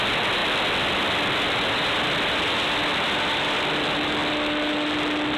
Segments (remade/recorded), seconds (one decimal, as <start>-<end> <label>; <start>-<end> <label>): 0.0-5.4 recorded